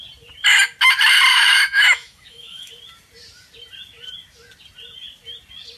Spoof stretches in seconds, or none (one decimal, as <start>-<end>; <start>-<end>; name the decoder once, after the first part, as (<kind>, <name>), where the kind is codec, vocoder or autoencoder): 1.3-2.7 (autoencoder, DAC-VAE)